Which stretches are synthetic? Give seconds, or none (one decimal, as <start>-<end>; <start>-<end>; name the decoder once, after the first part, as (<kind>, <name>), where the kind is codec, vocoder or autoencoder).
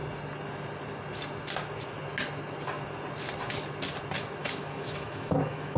4.4-5.8 (autoencoder, DAC-VAE)